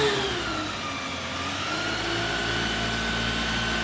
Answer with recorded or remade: recorded